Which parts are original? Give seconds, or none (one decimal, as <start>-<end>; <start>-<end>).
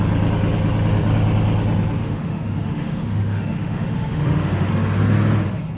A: 0.0-2.0; 4.7-5.8